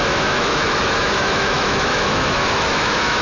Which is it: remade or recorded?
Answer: remade